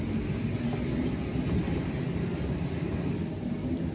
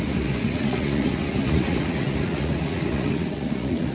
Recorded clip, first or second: first